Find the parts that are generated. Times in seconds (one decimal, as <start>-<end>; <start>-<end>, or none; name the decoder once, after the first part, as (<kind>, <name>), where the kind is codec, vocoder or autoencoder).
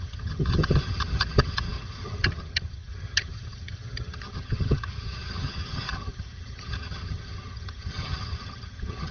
0.0-9.1 (vocoder, HiFi-GAN)